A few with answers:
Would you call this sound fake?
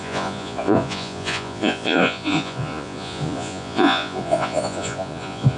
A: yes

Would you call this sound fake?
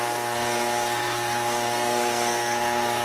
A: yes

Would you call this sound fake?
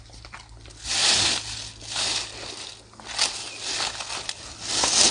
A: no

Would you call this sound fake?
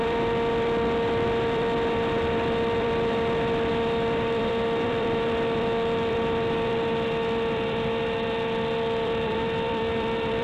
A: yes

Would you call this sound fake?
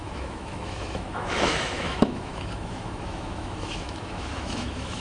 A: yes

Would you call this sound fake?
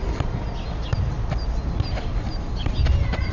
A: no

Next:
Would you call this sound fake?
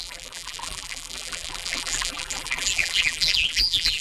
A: yes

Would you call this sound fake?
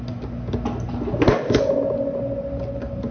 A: no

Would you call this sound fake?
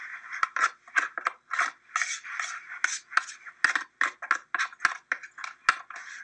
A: no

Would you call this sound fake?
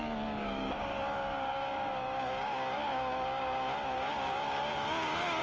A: yes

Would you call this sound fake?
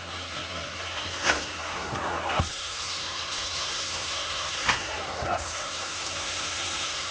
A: yes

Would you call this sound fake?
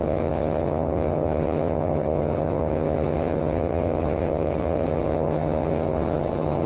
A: yes